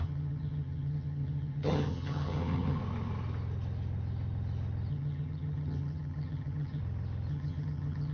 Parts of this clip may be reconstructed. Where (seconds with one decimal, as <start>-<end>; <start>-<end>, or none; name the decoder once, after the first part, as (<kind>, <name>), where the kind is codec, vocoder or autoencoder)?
0.0-2.8 (vocoder, HiFi-GAN); 4.9-6.8; 7.3-8.1